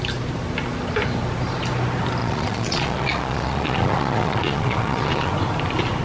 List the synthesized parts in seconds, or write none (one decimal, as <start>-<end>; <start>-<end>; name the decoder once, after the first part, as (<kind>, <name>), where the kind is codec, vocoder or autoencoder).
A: 2.2-5.3 (vocoder, Vocos)